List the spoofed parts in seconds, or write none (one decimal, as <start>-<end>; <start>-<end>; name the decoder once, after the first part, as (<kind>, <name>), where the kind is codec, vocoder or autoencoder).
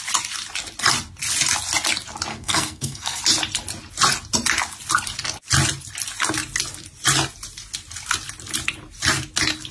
2.3-3.2 (codec, SNAC)